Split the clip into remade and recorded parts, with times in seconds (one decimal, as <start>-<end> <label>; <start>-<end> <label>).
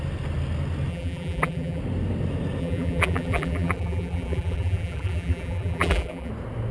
0.0-0.9 recorded; 0.9-1.8 remade; 1.8-2.6 recorded; 2.6-6.3 remade; 6.3-6.7 recorded